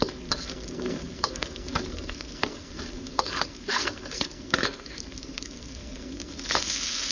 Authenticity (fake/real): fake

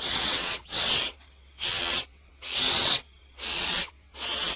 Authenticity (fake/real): fake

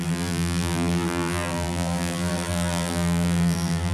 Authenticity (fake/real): fake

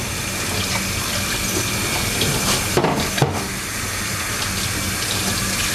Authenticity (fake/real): real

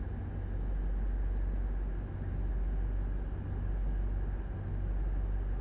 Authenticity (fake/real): real